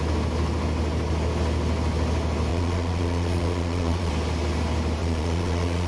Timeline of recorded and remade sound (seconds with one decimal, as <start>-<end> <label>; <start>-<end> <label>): 0.0-2.5 recorded; 2.5-4.1 remade; 4.1-5.0 recorded; 5.0-5.9 remade